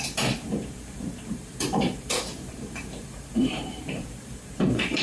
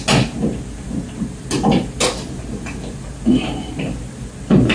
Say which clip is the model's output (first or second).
first